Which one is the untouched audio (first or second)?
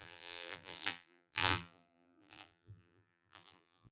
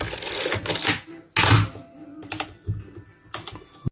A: second